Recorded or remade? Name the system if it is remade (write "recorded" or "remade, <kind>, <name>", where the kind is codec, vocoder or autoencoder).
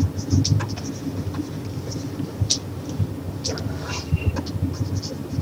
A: recorded